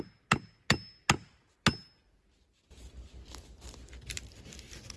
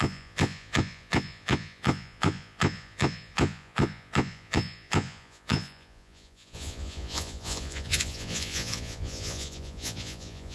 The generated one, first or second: second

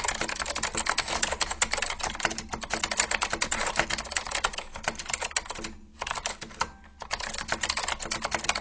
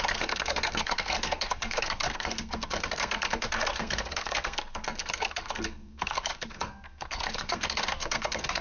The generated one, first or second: second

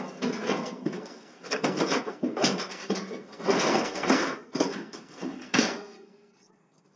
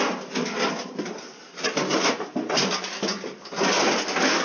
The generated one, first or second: first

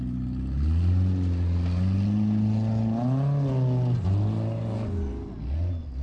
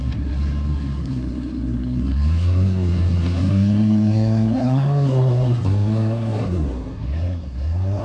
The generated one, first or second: second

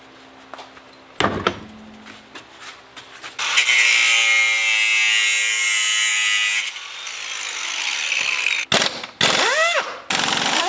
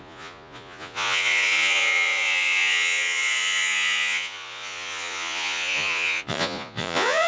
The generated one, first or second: second